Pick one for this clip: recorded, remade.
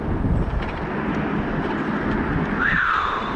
recorded